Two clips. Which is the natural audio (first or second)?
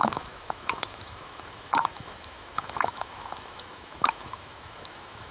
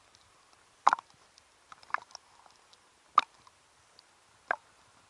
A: second